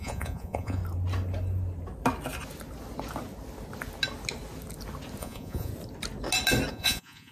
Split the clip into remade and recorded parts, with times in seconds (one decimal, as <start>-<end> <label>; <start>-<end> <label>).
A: 0.0-0.8 remade; 0.8-5.2 recorded; 5.2-5.7 remade; 5.7-6.7 recorded; 6.7-7.3 remade